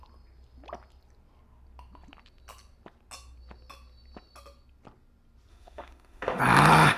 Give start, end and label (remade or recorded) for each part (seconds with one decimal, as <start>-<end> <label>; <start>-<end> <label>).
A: 0.0-5.5 recorded; 5.5-6.4 remade; 6.4-7.0 recorded